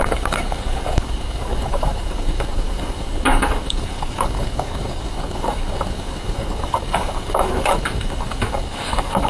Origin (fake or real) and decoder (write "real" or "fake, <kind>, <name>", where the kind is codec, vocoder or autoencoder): fake, codec, DAC